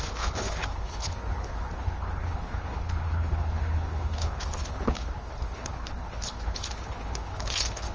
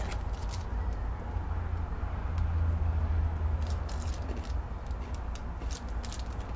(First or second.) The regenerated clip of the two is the first